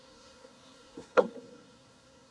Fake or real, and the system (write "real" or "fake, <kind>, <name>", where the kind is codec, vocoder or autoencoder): fake, codec, SNAC